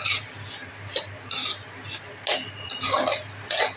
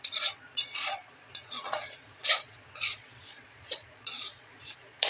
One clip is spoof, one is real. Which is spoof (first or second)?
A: second